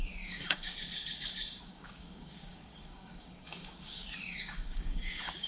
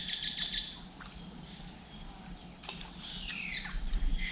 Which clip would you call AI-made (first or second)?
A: first